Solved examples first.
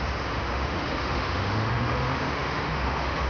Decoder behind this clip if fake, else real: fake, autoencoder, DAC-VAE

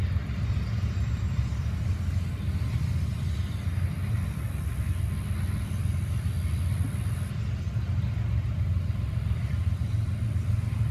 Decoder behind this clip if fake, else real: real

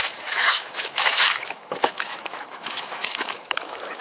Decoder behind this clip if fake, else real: fake, autoencoder, DAC-VAE